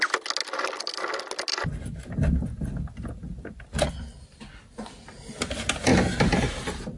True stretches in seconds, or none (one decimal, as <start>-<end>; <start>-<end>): 0.0-7.0